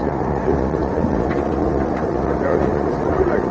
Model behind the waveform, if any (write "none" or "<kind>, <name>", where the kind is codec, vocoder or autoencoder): vocoder, Vocos